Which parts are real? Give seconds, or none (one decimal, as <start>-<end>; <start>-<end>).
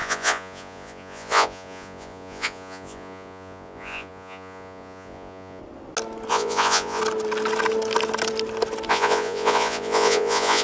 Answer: 5.6-6.3; 7.0-8.9